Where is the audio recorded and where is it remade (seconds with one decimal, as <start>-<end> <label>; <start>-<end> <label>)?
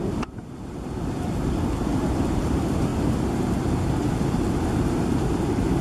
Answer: 0.0-0.4 remade; 0.4-2.4 recorded; 2.4-5.8 remade